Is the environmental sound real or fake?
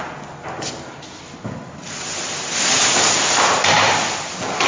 real